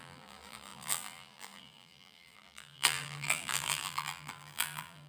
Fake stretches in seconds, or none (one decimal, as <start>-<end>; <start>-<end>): 0.0-5.1